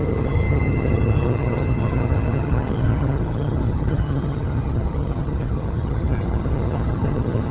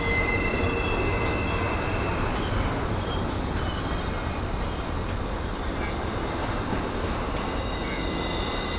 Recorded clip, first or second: second